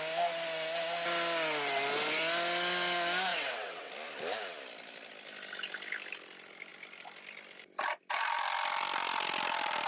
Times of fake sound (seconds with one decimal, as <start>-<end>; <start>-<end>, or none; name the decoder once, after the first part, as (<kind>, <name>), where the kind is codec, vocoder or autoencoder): 3.3-3.9 (vocoder, WaveNeXt)